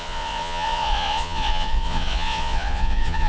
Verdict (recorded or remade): remade